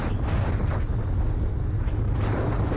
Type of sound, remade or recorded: recorded